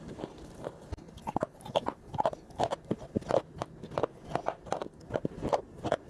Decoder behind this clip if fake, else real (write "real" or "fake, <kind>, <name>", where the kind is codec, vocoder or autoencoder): real